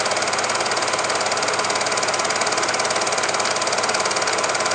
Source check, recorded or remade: recorded